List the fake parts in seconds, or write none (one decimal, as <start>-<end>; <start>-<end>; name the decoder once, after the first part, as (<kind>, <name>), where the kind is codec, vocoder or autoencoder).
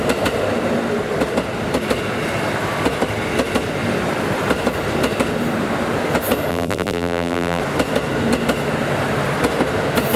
6.5-7.6 (vocoder, BigVGAN v2)